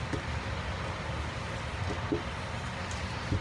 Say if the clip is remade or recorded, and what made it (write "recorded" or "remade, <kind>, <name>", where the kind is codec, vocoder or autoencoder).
recorded